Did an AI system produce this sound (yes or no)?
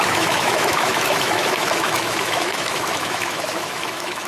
yes